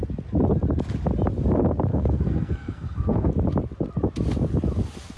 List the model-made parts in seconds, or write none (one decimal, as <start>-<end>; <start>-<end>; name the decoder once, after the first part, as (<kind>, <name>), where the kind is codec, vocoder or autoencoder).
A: 1.9-3.3 (codec, SNAC)